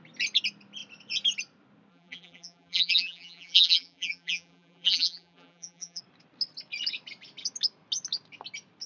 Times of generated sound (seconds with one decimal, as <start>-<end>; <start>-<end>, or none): 1.9-6.0